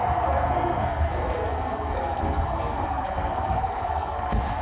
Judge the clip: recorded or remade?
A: remade